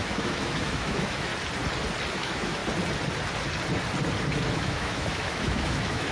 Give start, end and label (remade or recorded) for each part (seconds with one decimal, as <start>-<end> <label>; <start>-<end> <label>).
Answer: 0.0-1.3 remade; 1.3-2.1 recorded; 2.1-2.6 remade; 2.6-4.5 recorded; 4.5-6.1 remade